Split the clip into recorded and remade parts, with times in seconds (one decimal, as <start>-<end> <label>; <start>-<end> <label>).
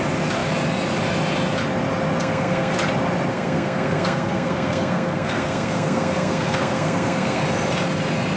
0.0-2.2 recorded; 2.2-2.7 remade; 2.7-3.3 recorded; 3.3-7.4 remade; 7.4-8.4 recorded